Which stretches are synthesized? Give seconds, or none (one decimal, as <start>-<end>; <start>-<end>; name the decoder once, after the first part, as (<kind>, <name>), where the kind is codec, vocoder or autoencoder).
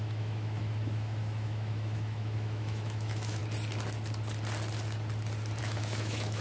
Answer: 0.0-3.4 (autoencoder, DAC-VAE); 5.6-6.4